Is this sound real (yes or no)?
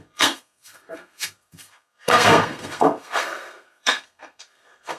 no